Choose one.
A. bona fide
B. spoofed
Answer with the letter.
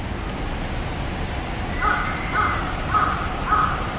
A